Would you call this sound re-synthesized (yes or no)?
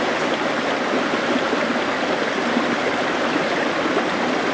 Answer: no